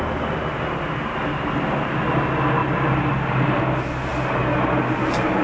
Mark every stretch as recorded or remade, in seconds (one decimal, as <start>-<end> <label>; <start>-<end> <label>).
0.0-1.3 recorded; 1.3-1.9 remade; 1.9-2.6 recorded; 2.6-3.1 remade; 3.1-5.4 recorded